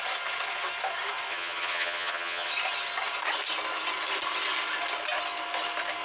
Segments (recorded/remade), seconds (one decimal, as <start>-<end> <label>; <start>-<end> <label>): 0.0-1.3 recorded; 1.3-2.5 remade; 2.5-6.0 recorded